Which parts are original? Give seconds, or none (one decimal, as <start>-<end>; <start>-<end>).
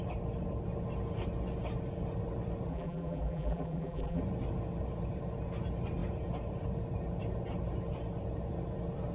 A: 0.0-2.7; 4.2-9.1